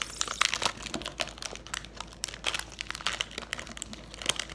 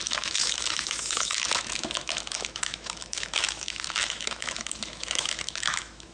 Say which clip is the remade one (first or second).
second